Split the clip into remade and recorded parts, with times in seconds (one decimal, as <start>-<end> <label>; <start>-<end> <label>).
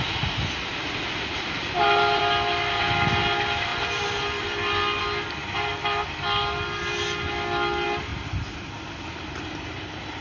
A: 0.0-0.8 recorded; 0.8-2.2 remade; 2.2-5.4 recorded; 5.4-6.1 remade; 6.1-8.1 recorded; 8.1-8.9 remade; 8.9-10.2 recorded